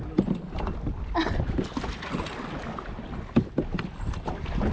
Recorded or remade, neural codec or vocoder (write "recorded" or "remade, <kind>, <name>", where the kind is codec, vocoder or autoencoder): recorded